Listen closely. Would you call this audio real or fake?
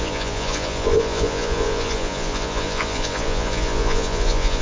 fake